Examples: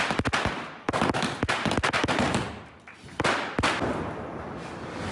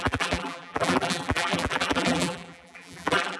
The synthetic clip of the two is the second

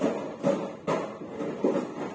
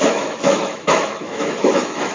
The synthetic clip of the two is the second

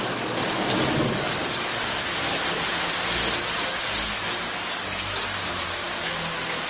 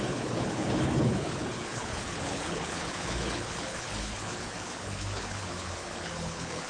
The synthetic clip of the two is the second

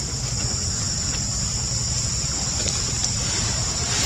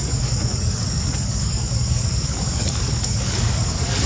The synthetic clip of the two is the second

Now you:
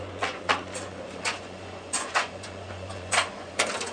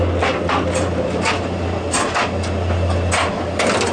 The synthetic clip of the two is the first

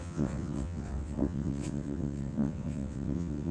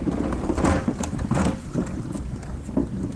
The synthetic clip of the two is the first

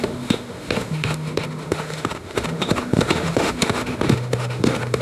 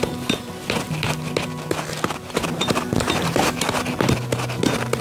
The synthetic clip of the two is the first